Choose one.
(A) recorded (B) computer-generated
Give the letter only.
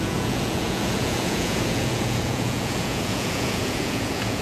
B